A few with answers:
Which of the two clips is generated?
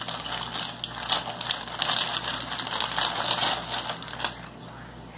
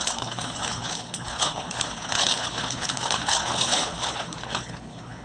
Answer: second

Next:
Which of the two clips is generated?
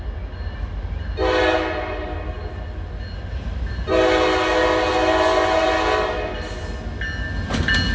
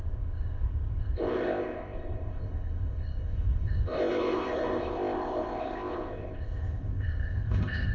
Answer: second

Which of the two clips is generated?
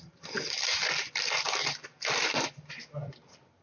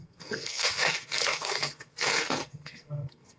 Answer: second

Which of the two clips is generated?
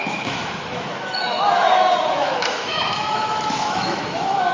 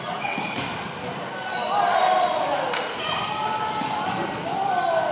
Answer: first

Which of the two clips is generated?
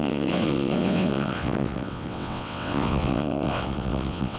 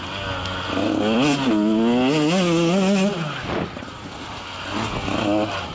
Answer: first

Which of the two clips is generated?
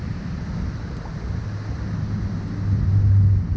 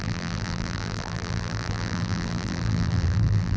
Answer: second